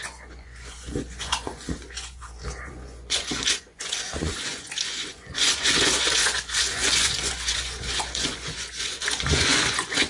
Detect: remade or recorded remade